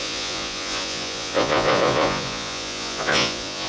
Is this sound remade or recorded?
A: remade